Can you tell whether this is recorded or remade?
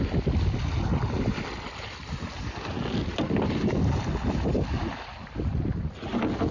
recorded